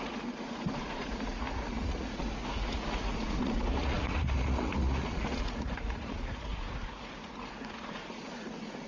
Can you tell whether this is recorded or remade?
remade